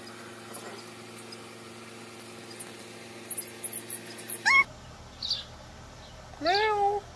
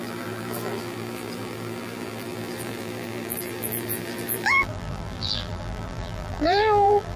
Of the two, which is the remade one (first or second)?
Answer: second